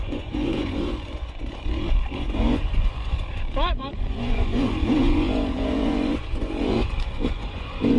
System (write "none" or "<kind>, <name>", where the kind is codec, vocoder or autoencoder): vocoder, Vocos